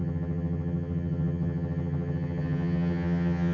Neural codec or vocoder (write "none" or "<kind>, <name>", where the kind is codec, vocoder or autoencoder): vocoder, HiFi-GAN